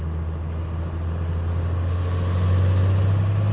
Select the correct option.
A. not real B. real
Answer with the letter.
B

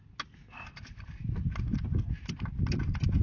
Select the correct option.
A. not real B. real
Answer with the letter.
B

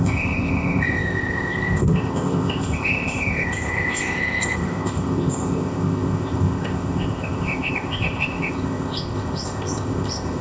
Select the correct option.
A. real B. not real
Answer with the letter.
B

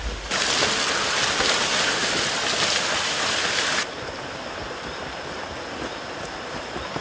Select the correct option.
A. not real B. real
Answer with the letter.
B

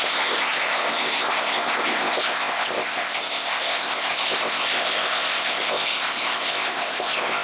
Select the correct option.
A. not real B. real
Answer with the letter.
A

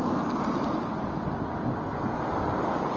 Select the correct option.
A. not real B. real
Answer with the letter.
B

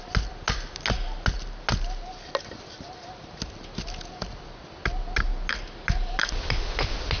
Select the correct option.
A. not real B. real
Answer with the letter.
B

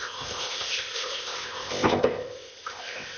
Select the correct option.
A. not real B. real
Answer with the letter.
A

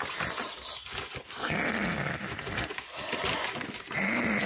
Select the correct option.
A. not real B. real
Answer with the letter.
B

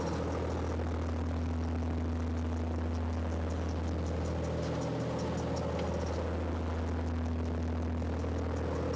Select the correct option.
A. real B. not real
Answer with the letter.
A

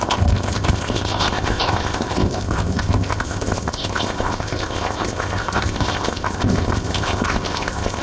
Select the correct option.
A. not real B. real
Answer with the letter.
A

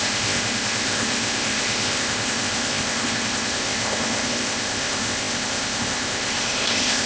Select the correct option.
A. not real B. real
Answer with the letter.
A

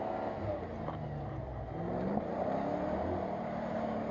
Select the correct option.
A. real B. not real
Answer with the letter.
A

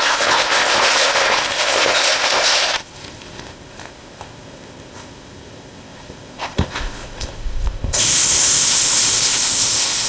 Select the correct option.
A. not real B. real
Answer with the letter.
A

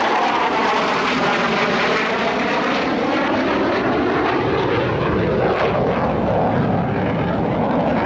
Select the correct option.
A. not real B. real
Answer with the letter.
B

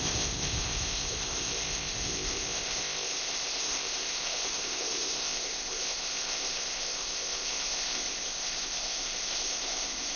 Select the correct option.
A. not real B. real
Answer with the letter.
A